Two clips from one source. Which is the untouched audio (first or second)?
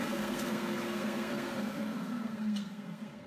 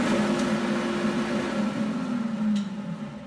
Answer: second